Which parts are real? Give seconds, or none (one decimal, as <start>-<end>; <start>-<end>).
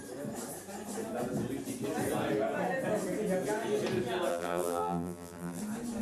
0.0-4.3; 5.6-6.0